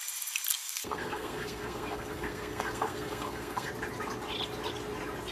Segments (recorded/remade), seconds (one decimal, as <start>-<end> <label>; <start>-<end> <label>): 0.0-0.5 recorded; 0.5-3.7 remade; 3.7-5.3 recorded